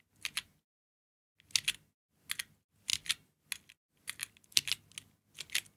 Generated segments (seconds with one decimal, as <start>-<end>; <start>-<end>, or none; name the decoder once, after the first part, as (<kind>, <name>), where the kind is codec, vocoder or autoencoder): none